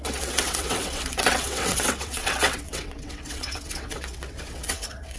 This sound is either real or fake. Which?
fake